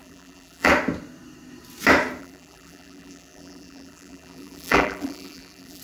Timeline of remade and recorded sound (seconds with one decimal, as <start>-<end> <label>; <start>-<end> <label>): 0.0-0.7 remade; 0.7-2.2 recorded; 2.2-5.8 remade

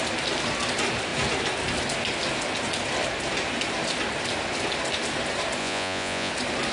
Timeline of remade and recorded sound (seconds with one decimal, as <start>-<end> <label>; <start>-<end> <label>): 0.0-5.6 recorded; 5.6-6.3 remade; 6.3-6.7 recorded

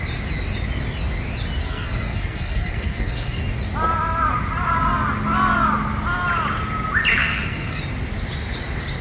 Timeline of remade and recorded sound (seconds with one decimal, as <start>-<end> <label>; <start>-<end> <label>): 0.0-1.6 recorded; 1.6-3.4 remade; 3.4-7.1 recorded; 7.1-7.8 remade; 7.8-9.0 recorded

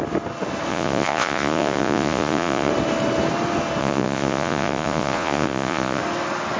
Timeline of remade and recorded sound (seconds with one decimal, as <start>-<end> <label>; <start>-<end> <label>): 0.0-0.7 recorded; 0.7-2.7 remade; 2.7-3.8 recorded; 3.8-6.0 remade; 6.0-6.6 recorded